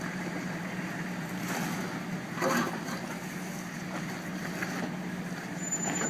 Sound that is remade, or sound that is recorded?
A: recorded